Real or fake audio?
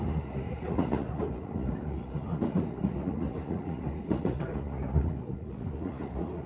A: fake